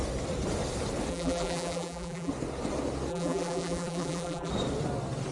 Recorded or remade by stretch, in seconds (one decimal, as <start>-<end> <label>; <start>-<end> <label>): 0.0-1.1 recorded; 1.1-2.3 remade; 2.3-3.1 recorded; 3.1-4.5 remade; 4.5-5.3 recorded